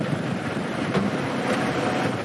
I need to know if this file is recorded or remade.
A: remade